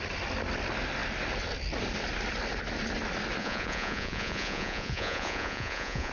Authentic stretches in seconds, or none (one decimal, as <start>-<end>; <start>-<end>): 0.0-3.4